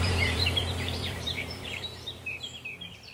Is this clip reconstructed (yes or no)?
yes